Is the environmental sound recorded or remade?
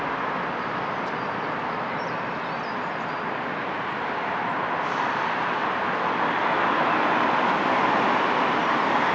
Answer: recorded